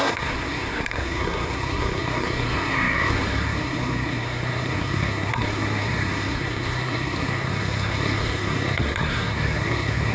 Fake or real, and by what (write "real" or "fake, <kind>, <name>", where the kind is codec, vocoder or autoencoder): fake, codec, SNAC